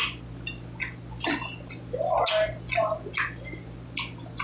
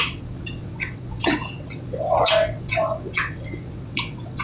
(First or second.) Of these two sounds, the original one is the first